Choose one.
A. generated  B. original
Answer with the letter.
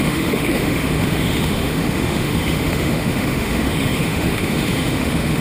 A